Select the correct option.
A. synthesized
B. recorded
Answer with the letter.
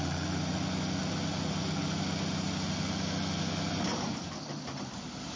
B